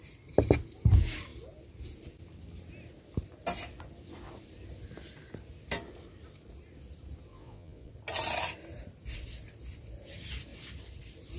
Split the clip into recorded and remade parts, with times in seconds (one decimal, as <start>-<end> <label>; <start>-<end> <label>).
0.0-7.3 recorded; 7.3-7.9 remade; 7.9-11.4 recorded